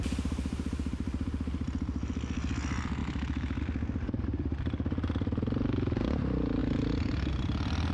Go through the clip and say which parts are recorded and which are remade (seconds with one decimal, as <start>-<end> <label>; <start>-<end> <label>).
0.0-3.0 recorded; 3.0-3.6 remade; 3.6-7.9 recorded